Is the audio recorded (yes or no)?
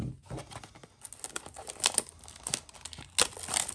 yes